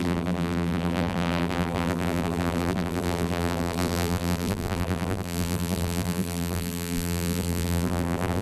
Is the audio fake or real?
fake